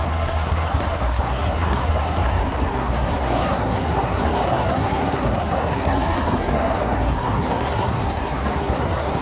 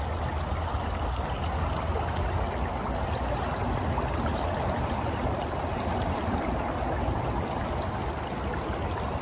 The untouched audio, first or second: second